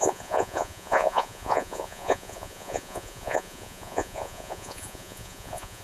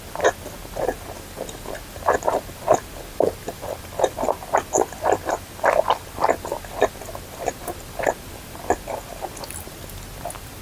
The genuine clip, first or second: second